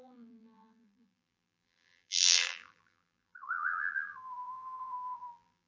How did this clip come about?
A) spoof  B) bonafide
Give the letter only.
A